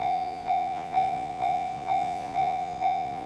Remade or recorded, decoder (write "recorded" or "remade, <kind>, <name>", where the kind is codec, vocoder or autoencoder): remade, vocoder, Vocos